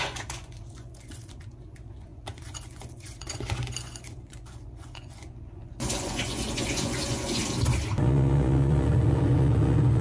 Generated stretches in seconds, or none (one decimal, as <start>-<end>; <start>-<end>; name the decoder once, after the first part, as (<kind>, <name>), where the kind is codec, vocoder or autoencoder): 0.0-7.4 (vocoder, Vocos); 8.0-10.0